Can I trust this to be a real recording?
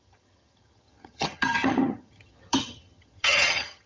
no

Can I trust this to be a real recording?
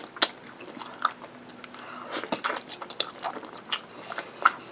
yes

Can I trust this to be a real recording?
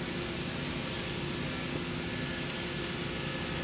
yes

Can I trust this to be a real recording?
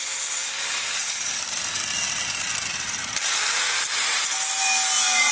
yes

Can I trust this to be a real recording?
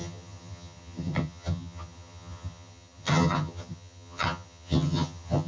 no